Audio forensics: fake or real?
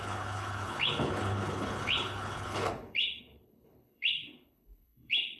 fake